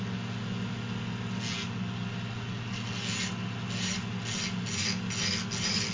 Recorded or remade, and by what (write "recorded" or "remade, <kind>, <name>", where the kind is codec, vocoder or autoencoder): recorded